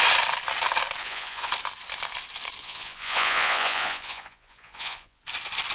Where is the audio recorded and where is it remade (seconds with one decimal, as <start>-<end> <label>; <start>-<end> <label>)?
0.0-1.0 recorded; 1.0-1.5 remade; 1.5-2.6 recorded; 2.6-5.2 remade; 5.2-5.7 recorded